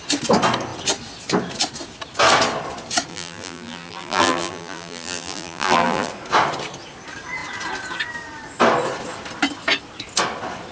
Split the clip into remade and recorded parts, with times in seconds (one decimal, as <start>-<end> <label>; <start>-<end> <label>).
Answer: 0.0-3.1 recorded; 3.1-6.1 remade; 6.1-10.7 recorded